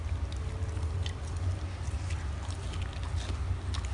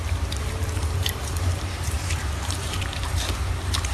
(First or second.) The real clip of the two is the first